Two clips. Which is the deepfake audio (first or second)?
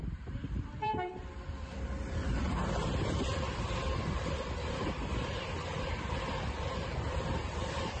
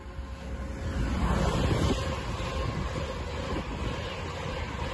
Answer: first